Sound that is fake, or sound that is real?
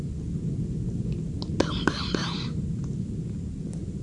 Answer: real